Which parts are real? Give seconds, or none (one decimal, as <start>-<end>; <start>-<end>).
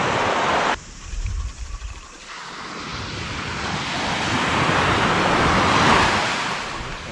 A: 0.0-7.1